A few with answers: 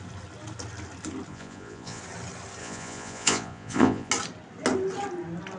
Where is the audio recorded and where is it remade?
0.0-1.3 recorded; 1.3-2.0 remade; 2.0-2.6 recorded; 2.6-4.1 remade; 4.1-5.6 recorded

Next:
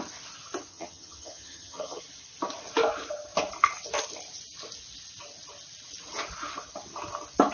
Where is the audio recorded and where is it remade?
0.0-0.7 recorded; 0.7-2.0 remade; 2.0-7.5 recorded

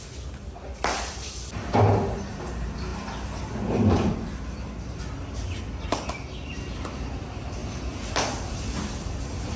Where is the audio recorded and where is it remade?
0.0-9.6 recorded

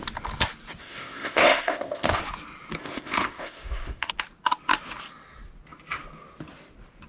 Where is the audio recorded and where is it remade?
0.0-0.8 recorded; 0.8-2.2 remade; 2.2-2.8 recorded; 2.8-4.1 remade; 4.1-7.1 recorded

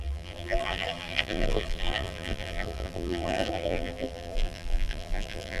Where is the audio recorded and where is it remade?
0.0-5.6 remade

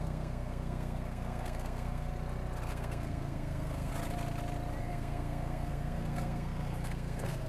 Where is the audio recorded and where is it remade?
0.0-2.1 remade; 2.1-2.7 recorded; 2.7-3.9 remade; 3.9-4.8 recorded; 4.8-7.5 remade

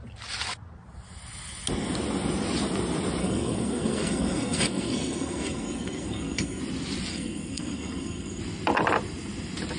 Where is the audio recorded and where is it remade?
0.0-3.2 recorded; 3.2-6.6 remade; 6.6-7.1 recorded; 7.1-8.4 remade; 8.4-9.8 recorded